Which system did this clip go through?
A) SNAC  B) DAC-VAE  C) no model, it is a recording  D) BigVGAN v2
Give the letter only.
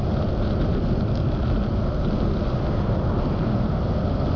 C